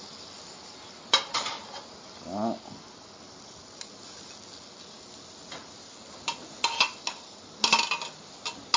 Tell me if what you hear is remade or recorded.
recorded